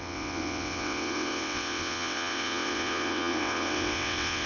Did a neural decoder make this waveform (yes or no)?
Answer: yes